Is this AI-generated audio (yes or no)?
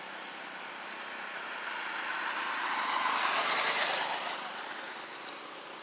no